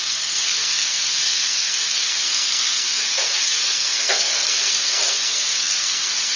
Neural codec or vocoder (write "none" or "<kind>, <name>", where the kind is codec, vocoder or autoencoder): codec, SNAC